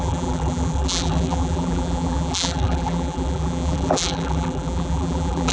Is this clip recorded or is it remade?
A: remade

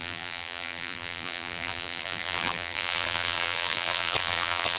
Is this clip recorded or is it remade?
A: remade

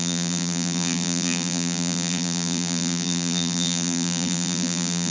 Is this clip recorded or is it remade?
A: remade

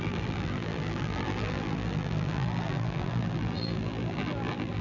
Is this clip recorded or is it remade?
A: remade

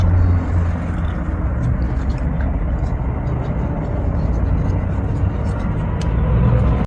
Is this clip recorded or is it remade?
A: recorded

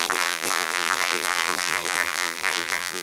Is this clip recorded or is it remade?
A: remade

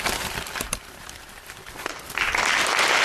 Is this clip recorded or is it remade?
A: remade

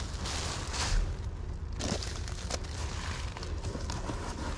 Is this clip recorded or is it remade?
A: recorded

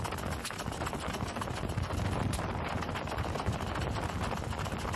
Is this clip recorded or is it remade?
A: recorded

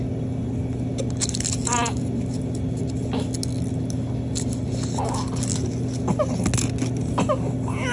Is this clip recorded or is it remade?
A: recorded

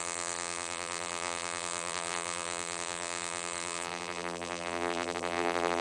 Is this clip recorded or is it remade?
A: remade